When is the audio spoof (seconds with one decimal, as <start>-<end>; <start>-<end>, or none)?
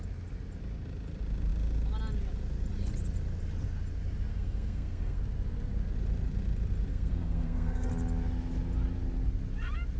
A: 4.3-5.2; 6.9-7.9